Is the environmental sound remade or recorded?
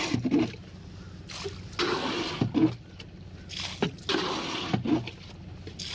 recorded